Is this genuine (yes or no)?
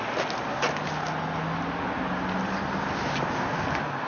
yes